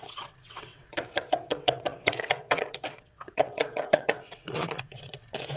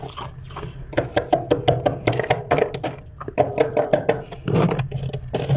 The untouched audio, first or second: second